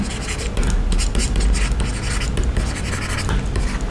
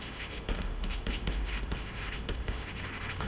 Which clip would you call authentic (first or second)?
first